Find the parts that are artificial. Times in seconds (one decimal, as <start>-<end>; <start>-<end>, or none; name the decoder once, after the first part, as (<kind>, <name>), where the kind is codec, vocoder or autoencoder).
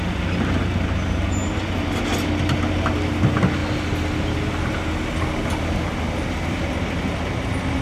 none